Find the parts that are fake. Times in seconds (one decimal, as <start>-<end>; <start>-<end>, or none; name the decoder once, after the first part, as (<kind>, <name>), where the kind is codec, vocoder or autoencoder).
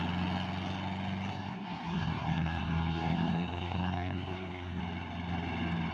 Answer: 1.3-4.8 (codec, SNAC)